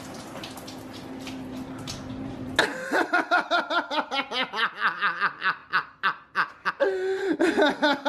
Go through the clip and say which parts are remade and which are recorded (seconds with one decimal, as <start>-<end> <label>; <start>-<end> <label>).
0.0-2.7 recorded; 2.7-3.6 remade; 3.6-5.6 recorded; 5.6-6.7 remade; 6.7-8.1 recorded